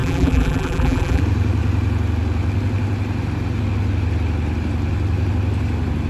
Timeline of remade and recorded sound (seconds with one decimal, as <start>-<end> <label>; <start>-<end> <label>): 0.0-1.2 remade; 1.2-6.1 recorded